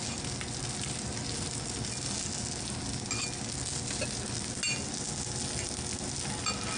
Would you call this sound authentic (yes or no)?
yes